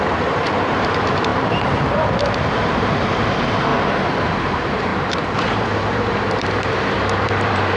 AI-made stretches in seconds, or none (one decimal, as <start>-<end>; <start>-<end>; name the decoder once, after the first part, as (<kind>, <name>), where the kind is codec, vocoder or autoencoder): 0.0-3.7 (vocoder, BigVGAN v2); 4.3-7.8